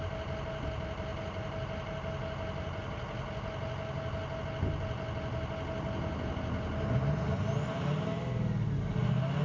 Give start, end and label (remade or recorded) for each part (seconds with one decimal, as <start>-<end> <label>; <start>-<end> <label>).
0.0-9.4 recorded